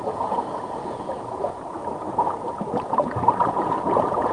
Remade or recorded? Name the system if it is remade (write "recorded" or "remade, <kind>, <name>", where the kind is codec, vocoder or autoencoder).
remade, vocoder, Vocos